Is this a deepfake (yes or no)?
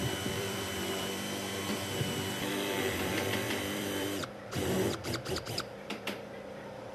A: yes